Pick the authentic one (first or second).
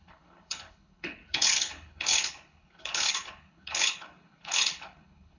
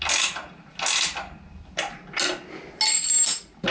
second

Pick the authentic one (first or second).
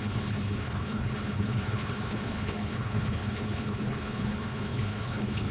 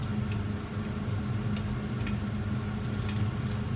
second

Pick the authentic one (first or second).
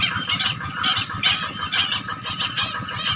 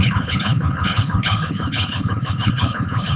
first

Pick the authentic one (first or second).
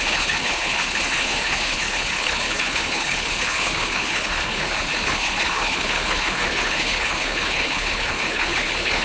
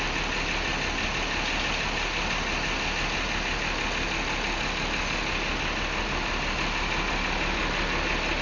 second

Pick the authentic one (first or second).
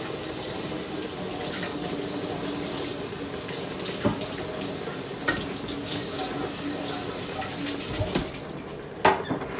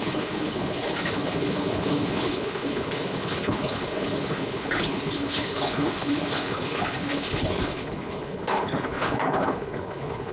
first